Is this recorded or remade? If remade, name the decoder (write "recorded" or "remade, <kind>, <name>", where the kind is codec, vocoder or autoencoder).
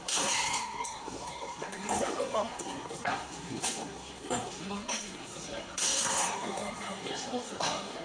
remade, codec, SNAC